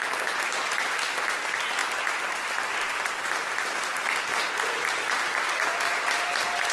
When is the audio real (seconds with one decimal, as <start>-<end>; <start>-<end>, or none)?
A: 0.0-6.7